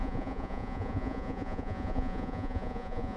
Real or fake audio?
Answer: fake